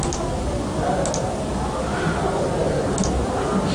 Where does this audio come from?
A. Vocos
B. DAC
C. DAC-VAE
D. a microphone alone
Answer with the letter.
D